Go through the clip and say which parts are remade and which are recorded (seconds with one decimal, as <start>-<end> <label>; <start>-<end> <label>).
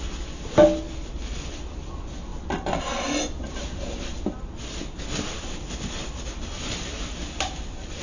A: 0.0-8.0 recorded